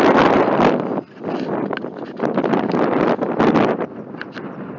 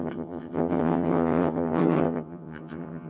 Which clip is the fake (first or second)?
second